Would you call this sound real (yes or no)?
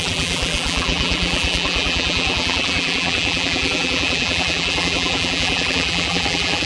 no